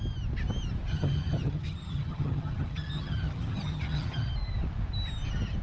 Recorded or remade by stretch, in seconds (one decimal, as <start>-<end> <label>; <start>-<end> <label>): 0.0-0.9 recorded; 0.9-4.3 remade; 4.3-5.6 recorded